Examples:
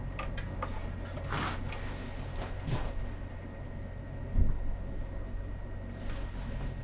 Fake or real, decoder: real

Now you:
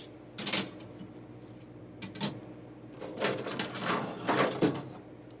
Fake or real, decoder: real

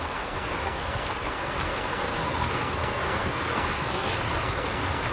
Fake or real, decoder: fake, codec, SNAC